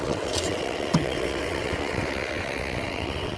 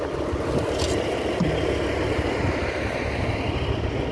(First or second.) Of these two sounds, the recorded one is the second